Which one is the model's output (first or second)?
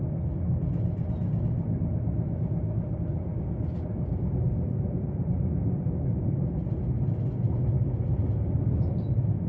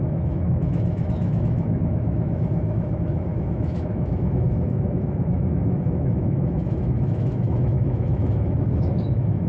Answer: second